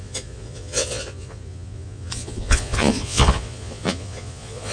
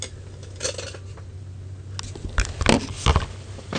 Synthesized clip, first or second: first